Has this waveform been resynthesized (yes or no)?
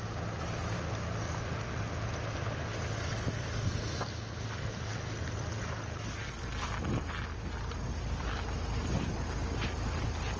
no